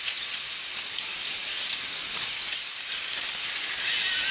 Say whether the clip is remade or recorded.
recorded